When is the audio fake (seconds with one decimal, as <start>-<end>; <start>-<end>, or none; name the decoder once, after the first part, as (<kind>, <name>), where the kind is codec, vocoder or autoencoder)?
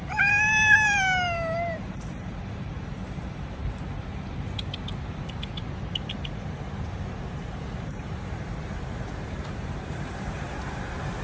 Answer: 0.0-3.6 (vocoder, BigVGAN v2); 5.1-11.2